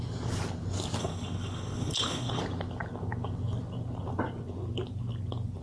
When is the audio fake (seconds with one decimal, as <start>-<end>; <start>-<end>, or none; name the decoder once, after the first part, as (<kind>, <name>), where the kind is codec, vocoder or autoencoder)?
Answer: 1.0-2.4 (codec, HILCodec)